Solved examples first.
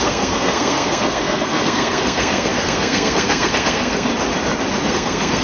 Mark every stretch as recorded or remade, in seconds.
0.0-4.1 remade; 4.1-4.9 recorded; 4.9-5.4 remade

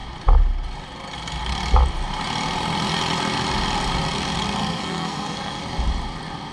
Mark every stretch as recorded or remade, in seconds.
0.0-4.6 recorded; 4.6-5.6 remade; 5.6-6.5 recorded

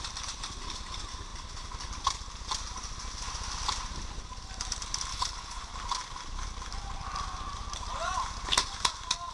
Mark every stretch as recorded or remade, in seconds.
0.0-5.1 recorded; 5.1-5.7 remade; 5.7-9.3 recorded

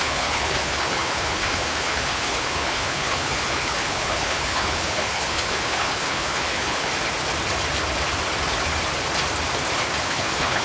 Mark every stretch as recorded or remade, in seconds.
0.0-6.9 remade; 6.9-10.0 recorded; 10.0-10.6 remade

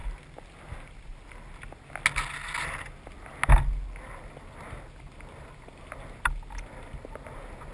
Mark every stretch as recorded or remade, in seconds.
0.0-7.7 recorded

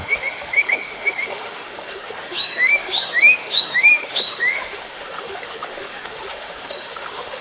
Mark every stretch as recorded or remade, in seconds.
0.0-7.4 remade

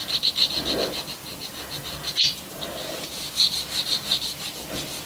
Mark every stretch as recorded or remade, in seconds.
0.0-0.7 remade; 0.7-5.1 recorded